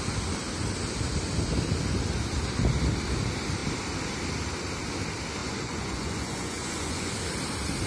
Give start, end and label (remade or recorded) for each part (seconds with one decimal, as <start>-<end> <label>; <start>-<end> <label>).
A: 0.0-5.4 recorded; 5.4-7.1 remade; 7.1-7.9 recorded